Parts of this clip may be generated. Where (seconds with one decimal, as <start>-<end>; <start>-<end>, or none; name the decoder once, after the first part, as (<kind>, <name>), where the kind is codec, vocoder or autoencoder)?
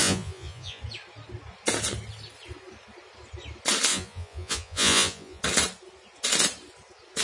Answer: 0.0-0.8 (vocoder, Vocos); 3.9-5.4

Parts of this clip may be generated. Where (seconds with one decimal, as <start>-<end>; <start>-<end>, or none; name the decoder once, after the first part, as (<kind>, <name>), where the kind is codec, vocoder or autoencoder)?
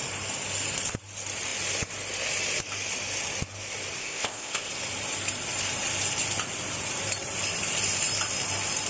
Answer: 4.0-4.7 (codec, ZipCodec)